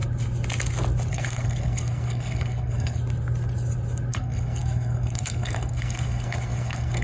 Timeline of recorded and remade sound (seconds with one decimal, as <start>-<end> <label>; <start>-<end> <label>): 0.0-1.1 recorded; 1.1-3.0 remade; 3.0-4.1 recorded; 4.1-7.0 remade